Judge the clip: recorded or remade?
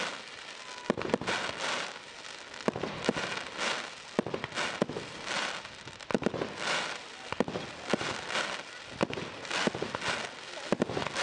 recorded